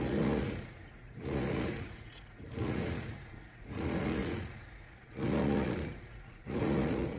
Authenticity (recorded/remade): remade